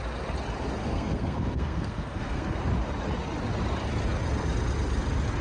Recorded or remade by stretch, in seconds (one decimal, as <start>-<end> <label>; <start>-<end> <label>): 0.0-0.8 recorded; 0.8-2.6 remade; 2.6-5.4 recorded